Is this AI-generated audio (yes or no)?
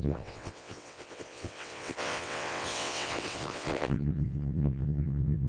yes